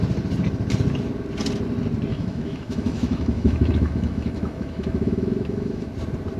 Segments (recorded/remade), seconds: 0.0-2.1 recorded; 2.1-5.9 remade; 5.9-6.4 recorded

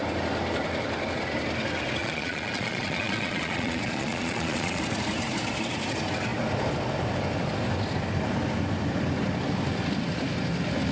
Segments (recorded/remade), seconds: 0.0-2.0 recorded; 2.0-4.8 remade; 4.8-10.9 recorded

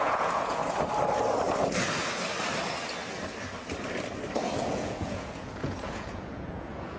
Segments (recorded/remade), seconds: 0.0-0.6 remade; 0.6-4.6 recorded; 4.6-7.0 remade

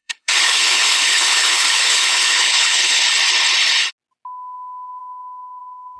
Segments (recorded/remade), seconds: 0.0-3.0 remade; 3.0-6.0 recorded

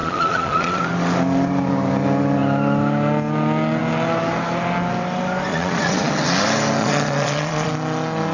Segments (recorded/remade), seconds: 0.0-0.8 remade; 0.8-5.5 recorded; 5.5-6.1 remade; 6.1-6.8 recorded; 6.8-7.7 remade; 7.7-8.3 recorded